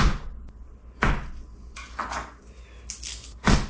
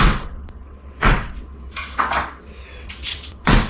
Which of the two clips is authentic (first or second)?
first